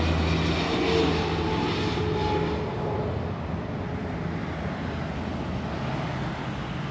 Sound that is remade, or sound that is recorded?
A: recorded